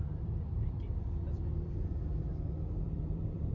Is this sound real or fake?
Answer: fake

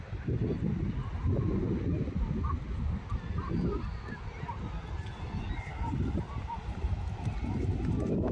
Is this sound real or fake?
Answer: real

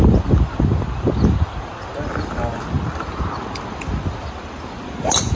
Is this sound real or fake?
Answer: real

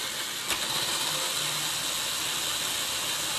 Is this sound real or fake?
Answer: real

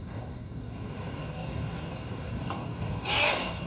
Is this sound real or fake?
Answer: fake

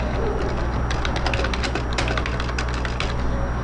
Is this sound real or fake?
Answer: real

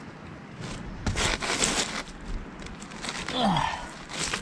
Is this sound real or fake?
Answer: real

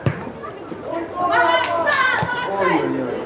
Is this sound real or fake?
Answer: fake